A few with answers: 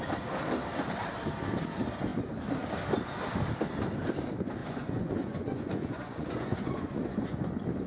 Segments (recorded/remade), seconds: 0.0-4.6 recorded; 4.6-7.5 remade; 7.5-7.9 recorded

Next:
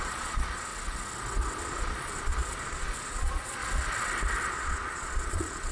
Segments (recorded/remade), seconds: 0.0-0.7 remade; 0.7-1.6 recorded; 1.6-3.6 remade; 3.6-4.5 recorded; 4.5-5.7 remade